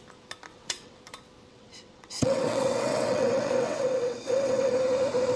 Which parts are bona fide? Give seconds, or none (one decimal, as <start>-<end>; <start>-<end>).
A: 0.0-0.5; 1.0-1.5; 4.7-5.4